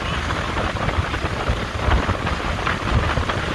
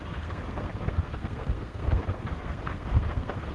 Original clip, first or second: first